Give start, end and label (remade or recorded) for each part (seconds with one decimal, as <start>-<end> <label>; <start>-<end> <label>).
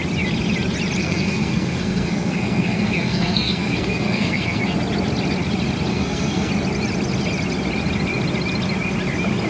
0.0-1.0 recorded; 1.0-4.6 remade; 4.6-5.9 recorded; 5.9-6.5 remade; 6.5-9.5 recorded